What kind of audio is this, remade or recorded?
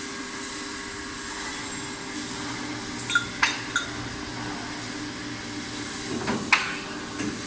recorded